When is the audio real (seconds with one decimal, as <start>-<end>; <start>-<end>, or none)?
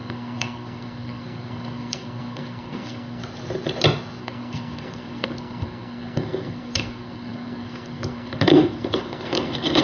3.2-4.2